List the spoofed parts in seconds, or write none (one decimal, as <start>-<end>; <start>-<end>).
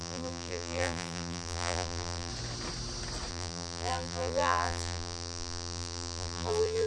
0.0-2.3; 3.3-6.9